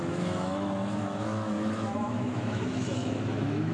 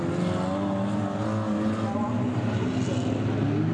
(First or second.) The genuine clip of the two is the second